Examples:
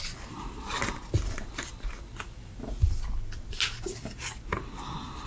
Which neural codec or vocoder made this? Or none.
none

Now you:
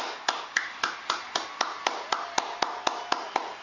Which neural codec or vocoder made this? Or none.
none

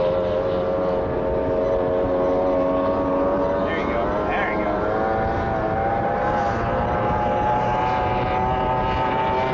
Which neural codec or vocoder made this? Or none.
none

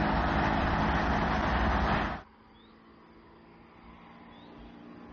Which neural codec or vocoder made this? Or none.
none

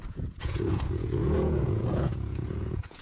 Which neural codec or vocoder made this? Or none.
vocoder, Vocos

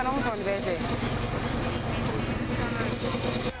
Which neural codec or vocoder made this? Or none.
none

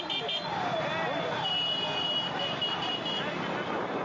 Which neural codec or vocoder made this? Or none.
none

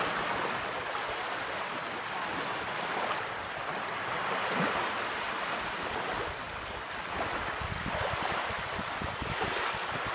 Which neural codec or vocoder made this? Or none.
none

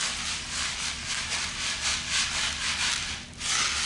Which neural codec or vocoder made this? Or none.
none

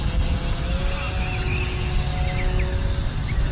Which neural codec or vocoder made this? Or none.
none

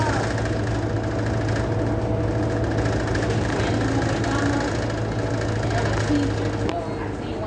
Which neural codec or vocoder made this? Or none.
none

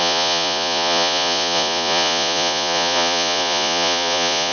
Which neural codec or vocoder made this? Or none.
vocoder, Vocos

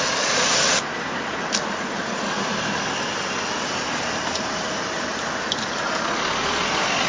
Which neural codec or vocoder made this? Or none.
none